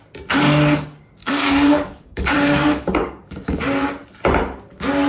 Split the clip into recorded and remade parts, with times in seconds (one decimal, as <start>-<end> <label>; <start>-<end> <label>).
0.0-1.2 recorded; 1.2-3.6 remade; 3.6-5.1 recorded